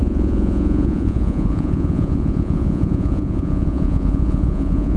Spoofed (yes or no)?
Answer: yes